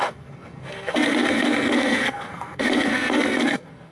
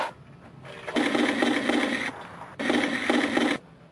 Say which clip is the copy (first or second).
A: first